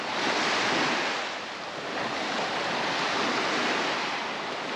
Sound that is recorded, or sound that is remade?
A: recorded